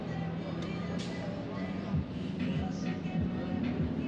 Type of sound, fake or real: real